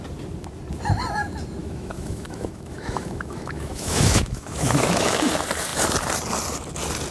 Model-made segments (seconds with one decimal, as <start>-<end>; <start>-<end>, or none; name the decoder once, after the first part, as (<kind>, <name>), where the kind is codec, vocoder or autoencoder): 1.6-5.3 (autoencoder, DAC-VAE)